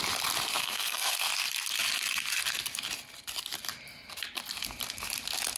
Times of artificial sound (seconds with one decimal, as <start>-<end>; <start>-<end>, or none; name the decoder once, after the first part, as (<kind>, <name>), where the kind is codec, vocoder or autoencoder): 0.6-1.3 (codec, SNAC)